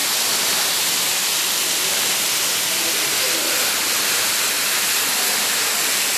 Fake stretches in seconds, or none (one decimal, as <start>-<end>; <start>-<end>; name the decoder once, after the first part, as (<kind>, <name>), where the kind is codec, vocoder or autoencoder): none